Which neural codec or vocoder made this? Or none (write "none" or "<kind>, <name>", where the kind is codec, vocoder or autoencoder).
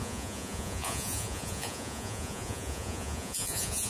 vocoder, Vocos